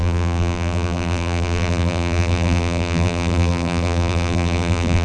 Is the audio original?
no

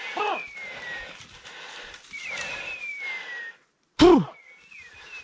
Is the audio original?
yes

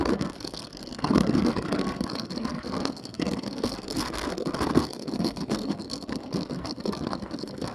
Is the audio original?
no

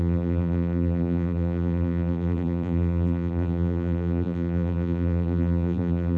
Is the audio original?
no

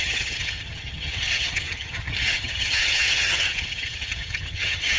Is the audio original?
no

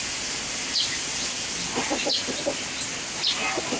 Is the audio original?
yes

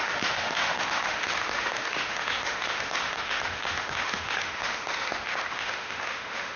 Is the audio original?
no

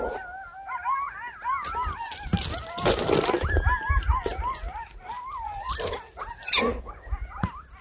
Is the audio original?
yes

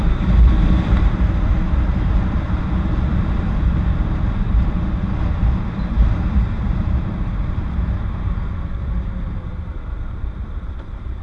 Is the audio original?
no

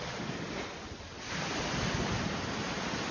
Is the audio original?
yes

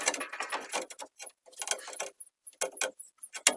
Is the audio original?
yes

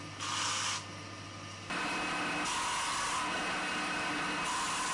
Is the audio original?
yes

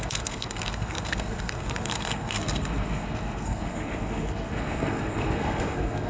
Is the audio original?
no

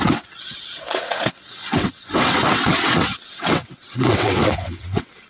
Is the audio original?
no